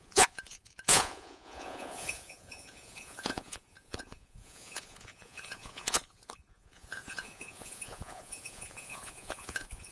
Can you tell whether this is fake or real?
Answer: fake